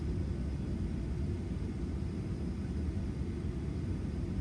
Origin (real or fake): real